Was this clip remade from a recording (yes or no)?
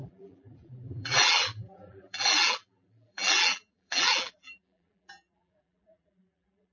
yes